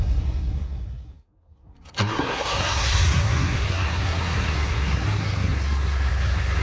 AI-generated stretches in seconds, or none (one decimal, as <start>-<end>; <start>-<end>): 0.0-6.6